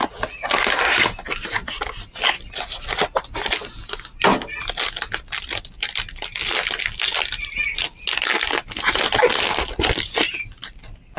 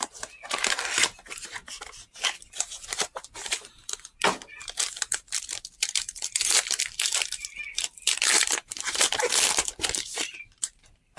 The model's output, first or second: second